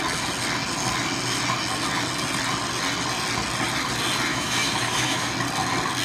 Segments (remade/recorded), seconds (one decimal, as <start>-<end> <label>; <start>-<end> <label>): 0.0-4.3 recorded; 4.3-5.3 remade; 5.3-6.0 recorded

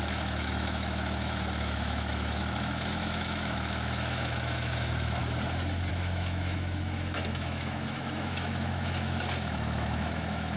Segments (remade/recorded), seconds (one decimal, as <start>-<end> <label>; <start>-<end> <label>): 0.0-5.2 remade; 5.2-5.9 recorded; 5.9-10.6 remade

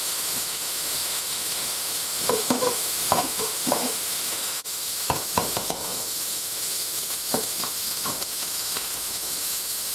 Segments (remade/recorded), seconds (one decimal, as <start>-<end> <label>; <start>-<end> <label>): 0.0-9.9 remade

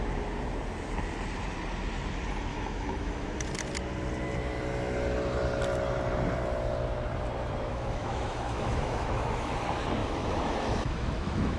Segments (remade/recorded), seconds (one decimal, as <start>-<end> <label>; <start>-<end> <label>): 0.0-2.5 recorded; 2.5-3.4 remade; 3.4-7.7 recorded; 7.7-9.5 remade; 9.5-10.0 recorded; 10.0-11.6 remade